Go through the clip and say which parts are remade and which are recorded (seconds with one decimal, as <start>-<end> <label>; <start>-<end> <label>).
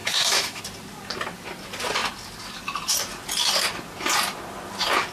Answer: 0.0-0.6 remade; 0.6-5.1 recorded